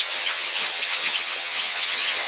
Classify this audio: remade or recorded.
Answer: remade